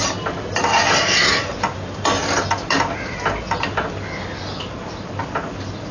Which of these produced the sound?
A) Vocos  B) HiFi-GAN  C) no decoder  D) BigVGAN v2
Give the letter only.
C